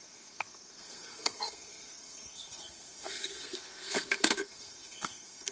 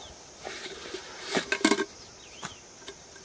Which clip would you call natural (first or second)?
second